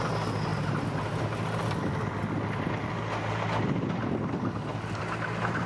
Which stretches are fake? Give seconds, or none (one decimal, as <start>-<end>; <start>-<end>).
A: none